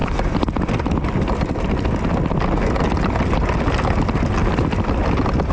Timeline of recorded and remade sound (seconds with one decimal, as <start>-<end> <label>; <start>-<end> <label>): 0.0-5.5 recorded